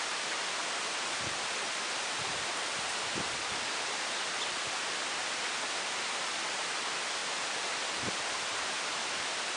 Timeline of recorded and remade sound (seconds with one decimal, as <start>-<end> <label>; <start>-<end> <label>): 0.0-9.6 recorded